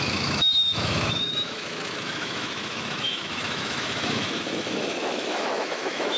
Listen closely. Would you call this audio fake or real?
fake